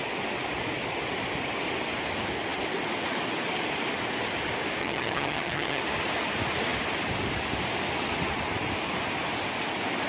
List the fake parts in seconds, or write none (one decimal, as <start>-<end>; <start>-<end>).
4.8-5.8